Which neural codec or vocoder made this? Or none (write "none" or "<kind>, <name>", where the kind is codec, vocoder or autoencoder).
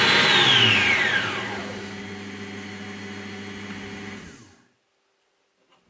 none